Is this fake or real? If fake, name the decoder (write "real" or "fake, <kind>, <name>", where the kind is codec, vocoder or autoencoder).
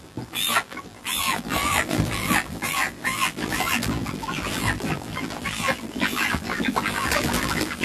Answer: fake, vocoder, BigVGAN v2